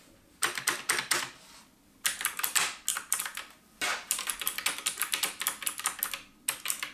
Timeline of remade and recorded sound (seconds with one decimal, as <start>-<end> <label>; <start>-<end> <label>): 0.0-2.9 recorded; 2.9-4.3 remade; 4.3-6.9 recorded